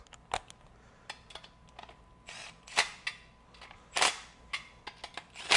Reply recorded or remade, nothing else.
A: recorded